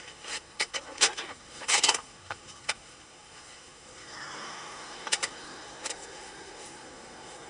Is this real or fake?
fake